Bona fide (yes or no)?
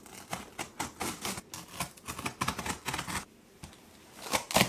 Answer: yes